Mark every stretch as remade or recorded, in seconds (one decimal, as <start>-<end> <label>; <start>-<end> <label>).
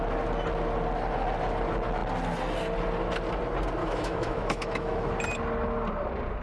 0.0-3.8 recorded; 3.8-5.1 remade; 5.1-6.4 recorded